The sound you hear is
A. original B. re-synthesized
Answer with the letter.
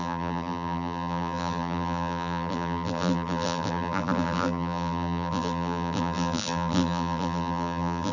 B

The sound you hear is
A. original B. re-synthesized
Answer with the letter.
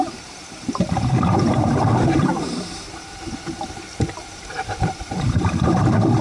B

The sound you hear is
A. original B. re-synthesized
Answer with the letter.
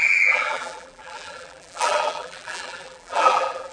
B